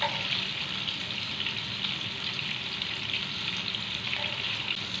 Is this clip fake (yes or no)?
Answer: no